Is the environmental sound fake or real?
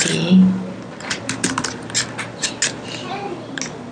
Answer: real